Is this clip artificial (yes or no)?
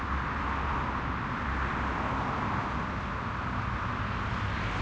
no